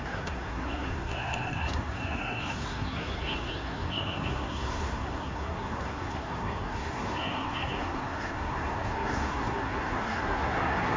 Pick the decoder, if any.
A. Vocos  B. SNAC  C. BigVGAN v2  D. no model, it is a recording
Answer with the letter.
B